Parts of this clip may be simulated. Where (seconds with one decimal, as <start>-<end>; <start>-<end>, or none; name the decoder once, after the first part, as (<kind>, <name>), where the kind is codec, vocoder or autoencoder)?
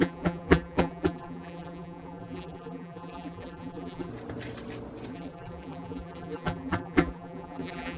0.0-4.1 (vocoder, BigVGAN v2); 5.1-8.0